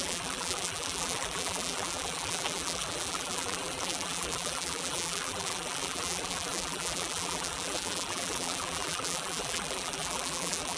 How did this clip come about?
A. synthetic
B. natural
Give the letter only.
A